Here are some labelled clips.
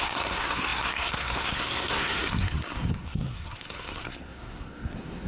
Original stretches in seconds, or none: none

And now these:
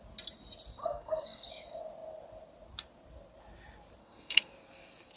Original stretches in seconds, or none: 0.0-0.8; 1.5-4.0; 4.5-5.2

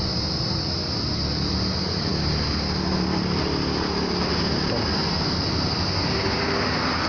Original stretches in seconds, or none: 0.0-7.1

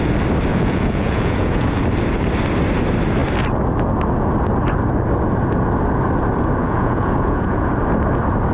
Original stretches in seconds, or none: 0.0-0.5; 1.8-6.6; 7.7-8.5